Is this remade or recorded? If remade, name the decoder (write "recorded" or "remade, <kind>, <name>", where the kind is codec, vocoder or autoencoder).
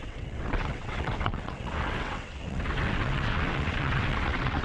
remade, vocoder, WaveNeXt